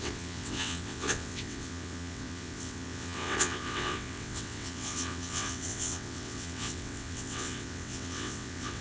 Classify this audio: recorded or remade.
remade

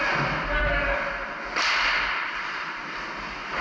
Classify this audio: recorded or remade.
recorded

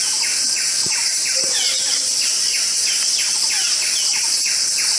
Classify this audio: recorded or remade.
recorded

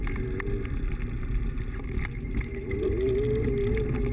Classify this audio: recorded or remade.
recorded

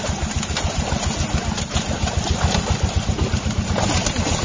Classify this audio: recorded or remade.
recorded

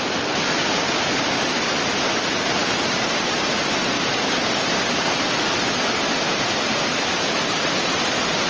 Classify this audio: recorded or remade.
recorded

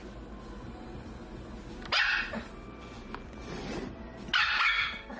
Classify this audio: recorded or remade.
recorded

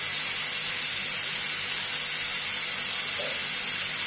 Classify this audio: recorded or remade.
recorded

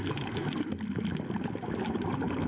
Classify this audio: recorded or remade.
recorded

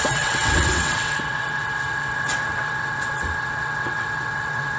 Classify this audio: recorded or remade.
remade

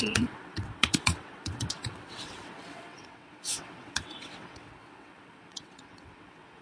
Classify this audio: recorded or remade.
remade